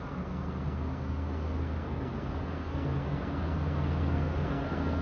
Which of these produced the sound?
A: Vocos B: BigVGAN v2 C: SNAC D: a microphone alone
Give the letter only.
C